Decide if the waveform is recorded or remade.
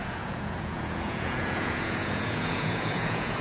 remade